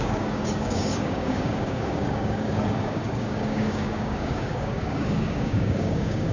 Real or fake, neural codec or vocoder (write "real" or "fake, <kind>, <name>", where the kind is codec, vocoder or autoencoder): fake, codec, DAC